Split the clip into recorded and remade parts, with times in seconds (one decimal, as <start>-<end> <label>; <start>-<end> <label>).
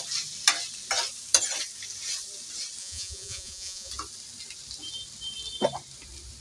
0.0-2.8 recorded; 2.8-3.9 remade; 3.9-6.4 recorded